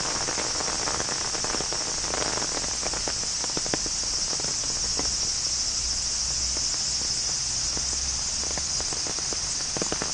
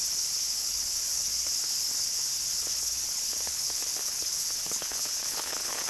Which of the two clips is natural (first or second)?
first